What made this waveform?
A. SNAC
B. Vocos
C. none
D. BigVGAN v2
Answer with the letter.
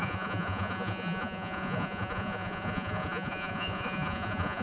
B